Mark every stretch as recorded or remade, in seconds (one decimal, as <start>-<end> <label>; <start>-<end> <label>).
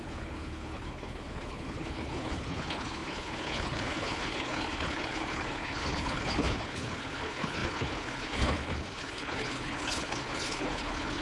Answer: 0.0-11.2 remade